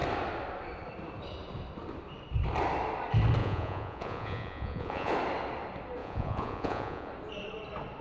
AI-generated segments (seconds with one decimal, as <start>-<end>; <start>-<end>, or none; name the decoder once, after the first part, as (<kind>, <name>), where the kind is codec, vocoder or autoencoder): 3.4-5.1 (vocoder, Vocos); 6.0-7.1